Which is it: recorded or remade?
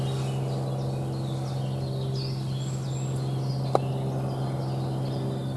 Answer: recorded